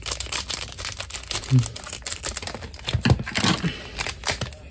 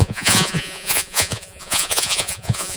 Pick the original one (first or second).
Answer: first